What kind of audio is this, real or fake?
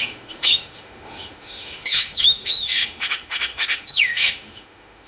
fake